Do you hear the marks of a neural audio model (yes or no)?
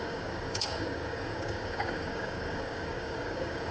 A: yes